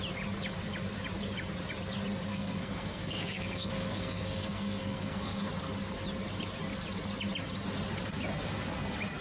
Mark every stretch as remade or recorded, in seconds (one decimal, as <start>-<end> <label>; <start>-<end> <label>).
0.0-2.3 recorded; 2.3-5.5 remade; 5.5-9.2 recorded